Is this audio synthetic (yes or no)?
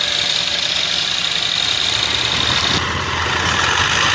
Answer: no